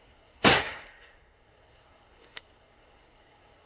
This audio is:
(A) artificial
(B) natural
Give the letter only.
A